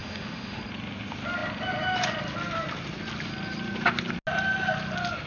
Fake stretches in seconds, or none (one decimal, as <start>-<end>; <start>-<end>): 0.0-0.6